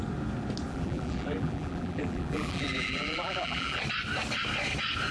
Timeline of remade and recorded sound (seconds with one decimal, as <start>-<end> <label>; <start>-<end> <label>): 0.0-0.7 recorded; 0.7-3.8 remade; 3.8-5.1 recorded